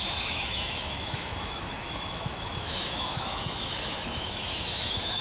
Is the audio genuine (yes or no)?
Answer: no